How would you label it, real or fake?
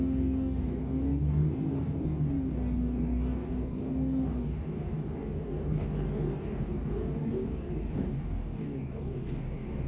fake